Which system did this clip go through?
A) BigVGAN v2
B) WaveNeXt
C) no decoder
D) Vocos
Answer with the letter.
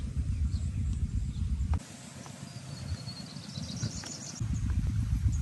C